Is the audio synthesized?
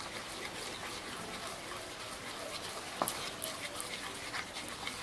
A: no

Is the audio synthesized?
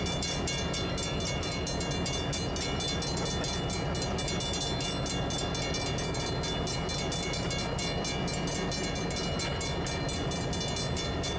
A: no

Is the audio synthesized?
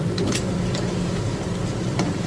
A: yes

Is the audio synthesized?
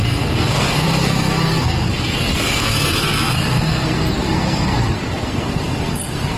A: yes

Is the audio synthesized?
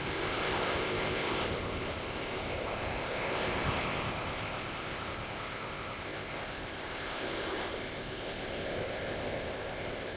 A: yes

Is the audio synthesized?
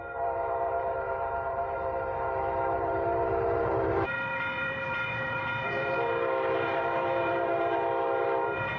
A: yes